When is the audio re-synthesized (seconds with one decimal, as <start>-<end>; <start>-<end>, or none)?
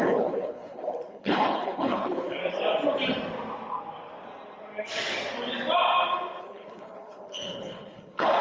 0.0-2.4; 6.4-8.4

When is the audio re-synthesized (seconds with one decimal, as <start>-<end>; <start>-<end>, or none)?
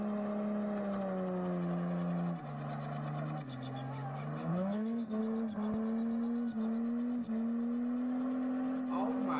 4.5-5.2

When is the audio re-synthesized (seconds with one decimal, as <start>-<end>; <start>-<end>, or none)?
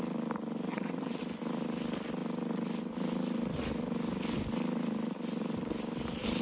0.7-1.2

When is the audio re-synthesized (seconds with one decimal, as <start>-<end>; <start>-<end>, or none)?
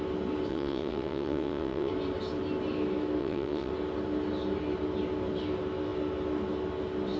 0.5-1.9; 3.2-3.7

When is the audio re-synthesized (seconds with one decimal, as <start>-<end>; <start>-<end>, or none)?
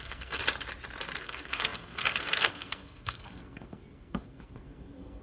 0.0-0.4; 1.2-5.2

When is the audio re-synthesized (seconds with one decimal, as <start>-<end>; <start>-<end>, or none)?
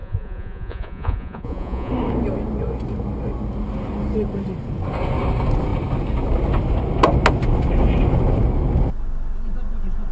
0.0-1.9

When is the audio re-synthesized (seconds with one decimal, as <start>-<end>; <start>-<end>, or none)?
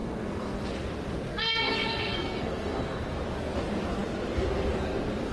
0.0-0.7; 1.3-3.1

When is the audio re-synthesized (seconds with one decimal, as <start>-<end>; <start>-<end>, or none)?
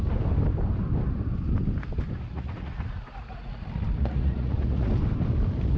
2.3-3.6; 4.0-4.9